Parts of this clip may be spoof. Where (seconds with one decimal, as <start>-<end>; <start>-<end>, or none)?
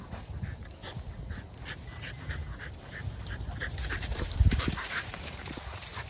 0.0-0.8; 1.5-6.1